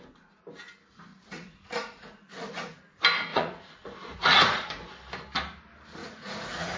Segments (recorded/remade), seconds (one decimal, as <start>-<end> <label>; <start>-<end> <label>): 0.0-1.1 recorded; 1.1-2.8 remade; 2.8-3.3 recorded; 3.3-4.9 remade; 4.9-6.0 recorded; 6.0-6.8 remade